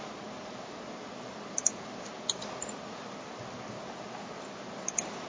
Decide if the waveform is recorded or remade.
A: recorded